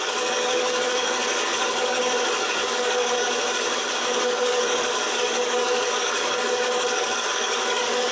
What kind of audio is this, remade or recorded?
remade